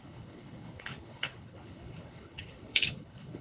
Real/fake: fake